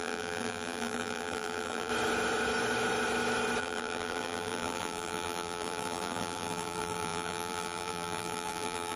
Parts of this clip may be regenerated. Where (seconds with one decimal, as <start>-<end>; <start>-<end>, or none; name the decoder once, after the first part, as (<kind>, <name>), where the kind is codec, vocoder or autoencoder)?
0.0-1.9 (vocoder, BigVGAN v2); 3.6-9.0